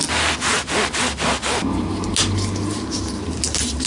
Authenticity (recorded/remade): recorded